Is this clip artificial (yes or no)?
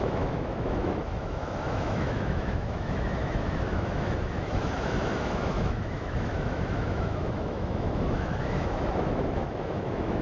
yes